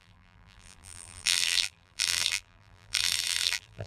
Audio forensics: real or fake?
fake